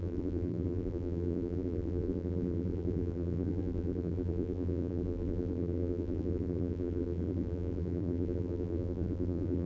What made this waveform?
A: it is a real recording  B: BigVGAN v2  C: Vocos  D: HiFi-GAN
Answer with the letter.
B